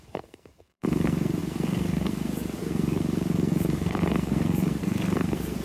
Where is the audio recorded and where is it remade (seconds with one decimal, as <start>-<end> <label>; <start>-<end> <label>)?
0.0-5.6 remade